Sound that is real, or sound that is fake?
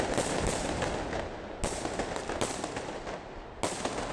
real